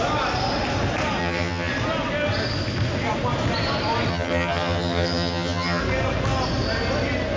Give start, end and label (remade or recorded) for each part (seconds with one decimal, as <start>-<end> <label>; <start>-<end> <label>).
0.0-1.2 recorded; 1.2-1.7 remade; 1.7-4.1 recorded; 4.1-5.8 remade; 5.8-7.4 recorded